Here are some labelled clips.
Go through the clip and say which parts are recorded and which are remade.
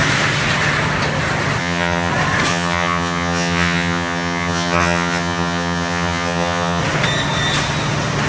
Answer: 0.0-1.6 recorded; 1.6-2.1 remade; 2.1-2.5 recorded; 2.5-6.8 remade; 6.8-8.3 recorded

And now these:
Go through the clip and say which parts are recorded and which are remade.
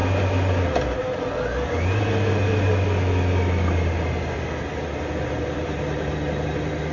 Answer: 0.0-6.9 recorded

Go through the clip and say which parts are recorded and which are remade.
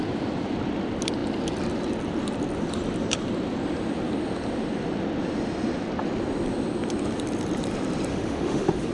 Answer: 0.0-8.1 recorded; 8.1-8.9 remade